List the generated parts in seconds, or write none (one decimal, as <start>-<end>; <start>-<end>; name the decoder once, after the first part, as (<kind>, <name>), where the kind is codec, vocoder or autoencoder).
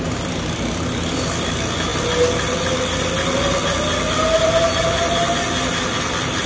none